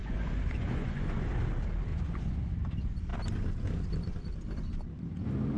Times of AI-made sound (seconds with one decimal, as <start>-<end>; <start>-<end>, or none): 0.0-1.2; 1.9-2.4

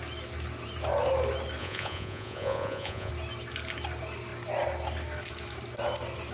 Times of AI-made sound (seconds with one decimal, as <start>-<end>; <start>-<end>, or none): 1.6-3.1